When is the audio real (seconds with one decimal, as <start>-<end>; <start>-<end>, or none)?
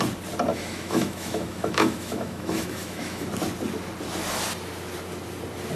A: 0.0-0.5; 3.3-5.8